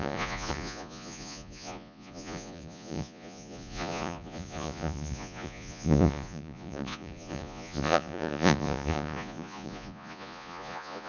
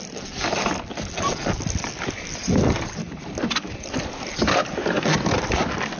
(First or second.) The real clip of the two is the second